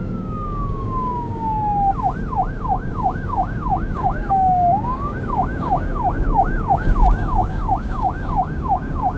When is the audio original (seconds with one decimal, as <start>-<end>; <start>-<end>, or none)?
1.6-2.5